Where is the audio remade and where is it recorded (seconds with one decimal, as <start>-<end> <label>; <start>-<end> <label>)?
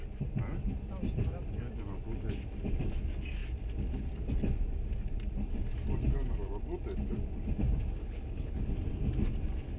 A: 0.0-8.0 recorded; 8.0-8.6 remade; 8.6-9.8 recorded